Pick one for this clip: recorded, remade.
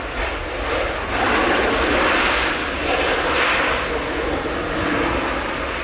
recorded